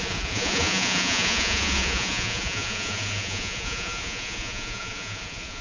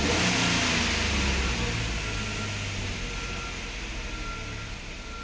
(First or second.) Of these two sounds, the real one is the second